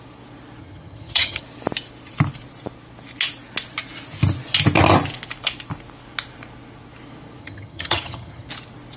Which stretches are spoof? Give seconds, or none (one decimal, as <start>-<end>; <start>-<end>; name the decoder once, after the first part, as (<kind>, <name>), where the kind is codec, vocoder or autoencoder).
0.6-1.4 (vocoder, HiFi-GAN); 7.4-8.5